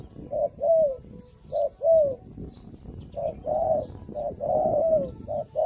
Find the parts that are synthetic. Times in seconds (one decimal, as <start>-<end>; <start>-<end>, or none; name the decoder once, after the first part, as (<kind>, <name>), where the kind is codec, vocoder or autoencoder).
none